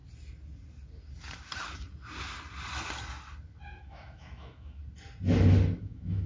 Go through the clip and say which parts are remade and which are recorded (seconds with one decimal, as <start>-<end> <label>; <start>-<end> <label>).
0.0-3.8 recorded; 3.8-4.8 remade; 4.8-5.8 recorded; 5.8-6.3 remade